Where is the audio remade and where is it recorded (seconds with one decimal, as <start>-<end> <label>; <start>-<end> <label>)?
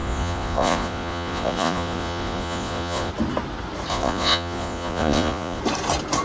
0.0-3.1 remade; 3.1-3.9 recorded; 3.9-5.6 remade; 5.6-6.2 recorded